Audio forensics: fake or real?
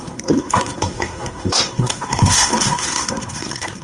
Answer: fake